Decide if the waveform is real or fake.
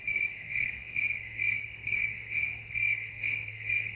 fake